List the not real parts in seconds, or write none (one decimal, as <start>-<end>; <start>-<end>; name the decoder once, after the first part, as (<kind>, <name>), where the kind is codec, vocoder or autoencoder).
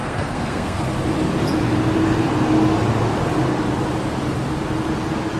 0.0-0.8 (codec, SNAC)